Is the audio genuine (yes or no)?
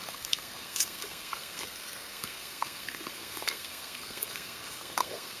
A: no